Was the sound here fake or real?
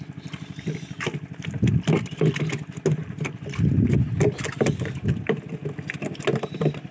real